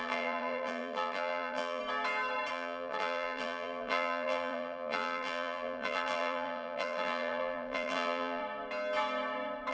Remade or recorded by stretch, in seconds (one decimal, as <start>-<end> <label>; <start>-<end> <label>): 0.0-1.8 remade; 1.8-2.5 recorded; 2.5-8.4 remade; 8.4-9.7 recorded